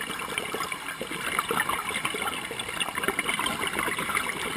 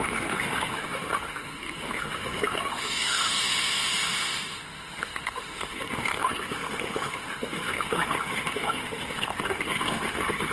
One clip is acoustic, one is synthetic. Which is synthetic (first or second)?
second